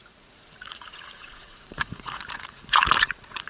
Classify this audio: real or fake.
fake